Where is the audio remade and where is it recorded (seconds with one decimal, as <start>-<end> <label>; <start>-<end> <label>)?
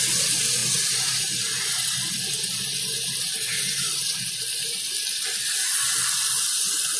0.0-0.6 recorded; 0.6-1.6 remade; 1.6-7.0 recorded